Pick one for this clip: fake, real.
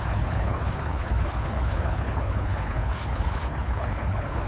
fake